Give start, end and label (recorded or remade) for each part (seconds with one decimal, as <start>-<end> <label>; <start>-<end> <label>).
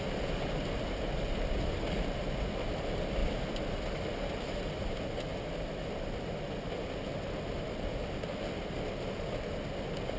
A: 0.0-10.2 recorded